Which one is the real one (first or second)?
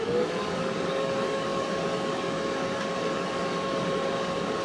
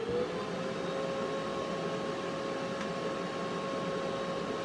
second